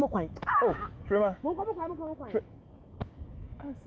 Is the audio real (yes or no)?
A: no